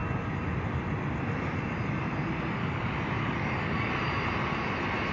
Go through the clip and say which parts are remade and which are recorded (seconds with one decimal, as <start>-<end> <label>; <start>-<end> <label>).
0.0-2.6 recorded; 2.6-3.9 remade; 3.9-5.1 recorded